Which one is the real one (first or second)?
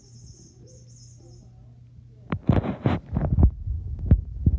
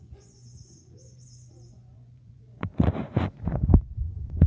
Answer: first